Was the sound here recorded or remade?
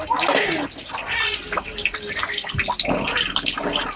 recorded